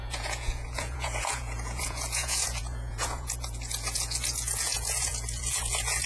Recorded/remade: remade